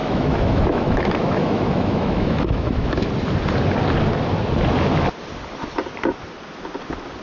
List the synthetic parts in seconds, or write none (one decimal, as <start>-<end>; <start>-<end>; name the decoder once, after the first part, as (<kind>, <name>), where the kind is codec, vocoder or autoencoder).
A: 0.0-3.1 (autoencoder, DAC-VAE)